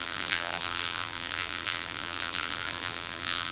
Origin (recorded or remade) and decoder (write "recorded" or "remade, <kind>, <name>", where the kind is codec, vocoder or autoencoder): remade, vocoder, BigVGAN v2